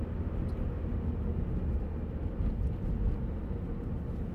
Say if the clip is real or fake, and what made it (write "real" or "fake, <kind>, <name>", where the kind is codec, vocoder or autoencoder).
real